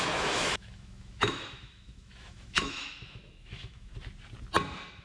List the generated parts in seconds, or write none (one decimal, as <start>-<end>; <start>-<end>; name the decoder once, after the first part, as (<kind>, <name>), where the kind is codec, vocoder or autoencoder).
0.0-3.9 (autoencoder, DAC-VAE)